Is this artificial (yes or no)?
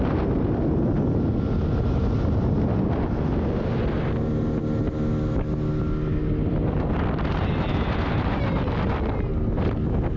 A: no